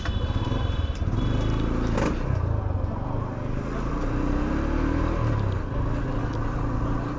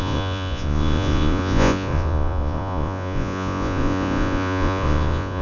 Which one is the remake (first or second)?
second